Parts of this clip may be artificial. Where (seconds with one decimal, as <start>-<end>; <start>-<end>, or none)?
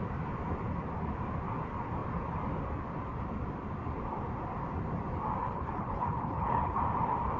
5.4-6.8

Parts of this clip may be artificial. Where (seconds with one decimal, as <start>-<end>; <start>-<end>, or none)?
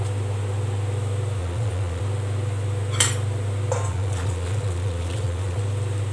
1.4-2.0; 3.9-5.6